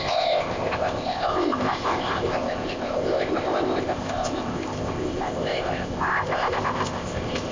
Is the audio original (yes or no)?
no